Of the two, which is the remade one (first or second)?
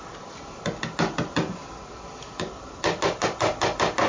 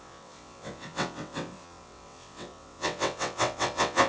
second